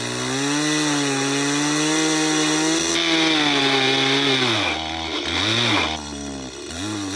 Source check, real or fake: real